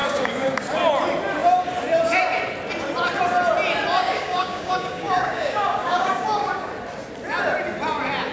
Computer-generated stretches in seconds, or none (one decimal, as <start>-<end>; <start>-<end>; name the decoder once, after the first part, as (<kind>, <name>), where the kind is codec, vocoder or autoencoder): 0.0-0.6 (codec, DAC); 4.0-6.7